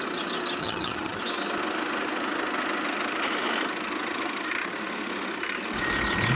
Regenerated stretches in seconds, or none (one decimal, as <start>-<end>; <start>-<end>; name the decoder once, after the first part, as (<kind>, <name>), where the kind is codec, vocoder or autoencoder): 0.6-1.2 (vocoder, HiFi-GAN)